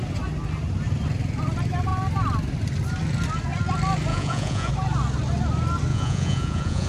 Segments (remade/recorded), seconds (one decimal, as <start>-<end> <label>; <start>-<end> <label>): 0.0-4.1 recorded; 4.1-4.7 remade; 4.7-5.9 recorded; 5.9-6.9 remade

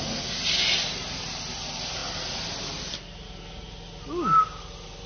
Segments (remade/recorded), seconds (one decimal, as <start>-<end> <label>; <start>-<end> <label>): 0.0-5.1 recorded

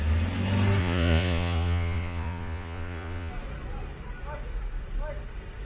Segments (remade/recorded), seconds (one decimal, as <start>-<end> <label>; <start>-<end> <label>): 0.0-0.8 recorded; 0.8-3.3 remade; 3.3-5.6 recorded